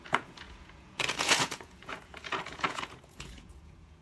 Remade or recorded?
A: remade